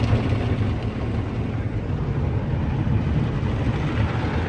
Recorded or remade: recorded